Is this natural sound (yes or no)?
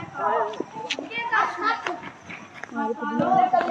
yes